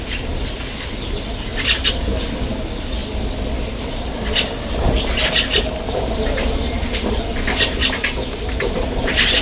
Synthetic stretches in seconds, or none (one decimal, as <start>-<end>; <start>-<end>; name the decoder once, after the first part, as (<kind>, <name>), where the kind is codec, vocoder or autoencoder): none